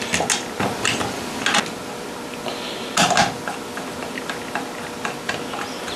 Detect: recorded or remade recorded